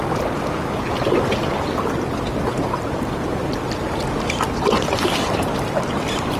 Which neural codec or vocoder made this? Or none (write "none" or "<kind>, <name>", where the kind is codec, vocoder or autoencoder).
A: none